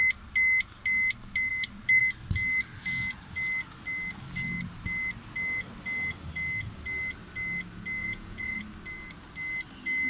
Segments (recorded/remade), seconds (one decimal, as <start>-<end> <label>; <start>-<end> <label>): 0.0-8.0 recorded; 8.0-8.6 remade; 8.6-10.1 recorded